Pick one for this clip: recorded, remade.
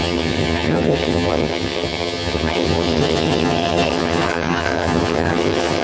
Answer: remade